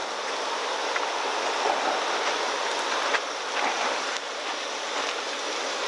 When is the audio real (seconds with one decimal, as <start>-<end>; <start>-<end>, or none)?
0.0-5.9